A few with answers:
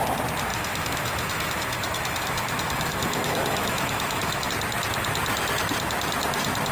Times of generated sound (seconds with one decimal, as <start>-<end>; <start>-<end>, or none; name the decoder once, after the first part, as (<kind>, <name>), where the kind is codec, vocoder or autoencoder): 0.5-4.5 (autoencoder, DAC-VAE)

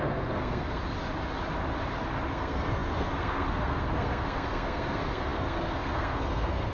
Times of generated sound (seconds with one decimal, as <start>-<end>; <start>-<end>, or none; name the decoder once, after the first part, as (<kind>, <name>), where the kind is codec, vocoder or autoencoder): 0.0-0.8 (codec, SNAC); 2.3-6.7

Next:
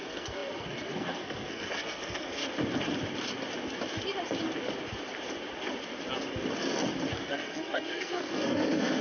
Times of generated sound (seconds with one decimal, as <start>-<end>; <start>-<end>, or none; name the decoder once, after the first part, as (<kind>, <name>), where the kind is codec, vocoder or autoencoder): 0.0-2.4 (codec, SNAC); 7.1-9.0

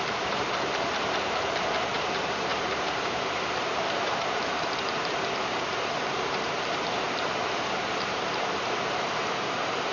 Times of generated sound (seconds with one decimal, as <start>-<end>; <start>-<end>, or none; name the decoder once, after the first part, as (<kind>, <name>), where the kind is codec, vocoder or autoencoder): 0.0-9.9 (vocoder, BigVGAN v2)